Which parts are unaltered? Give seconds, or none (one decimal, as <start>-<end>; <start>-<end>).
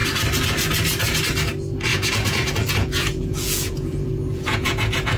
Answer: 0.0-1.9